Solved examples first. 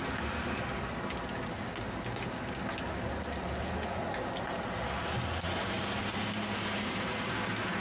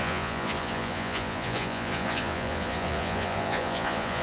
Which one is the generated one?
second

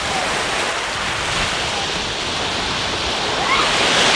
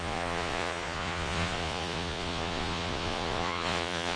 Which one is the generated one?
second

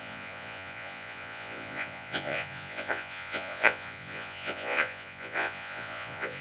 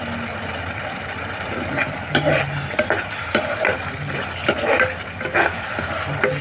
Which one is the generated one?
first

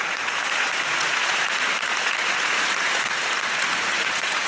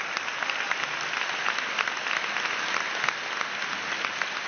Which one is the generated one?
first